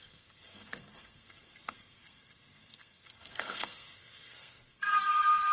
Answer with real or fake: fake